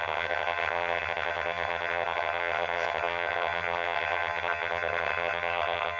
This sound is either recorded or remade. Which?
remade